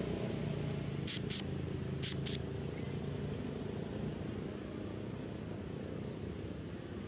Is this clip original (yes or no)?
yes